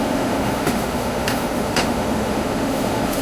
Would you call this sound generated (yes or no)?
yes